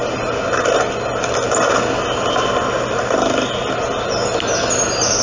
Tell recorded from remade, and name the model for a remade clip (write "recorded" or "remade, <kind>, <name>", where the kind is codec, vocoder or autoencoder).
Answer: recorded